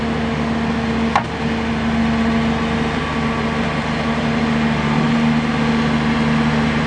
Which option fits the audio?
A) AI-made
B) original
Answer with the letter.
B